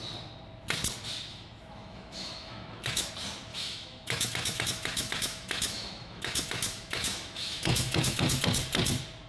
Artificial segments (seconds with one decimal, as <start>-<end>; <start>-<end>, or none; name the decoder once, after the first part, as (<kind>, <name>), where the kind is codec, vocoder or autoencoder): 1.3-3.1 (autoencoder, DAC-VAE); 3.5-8.4